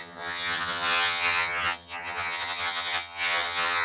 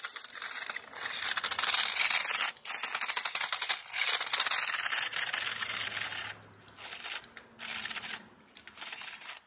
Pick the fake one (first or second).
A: first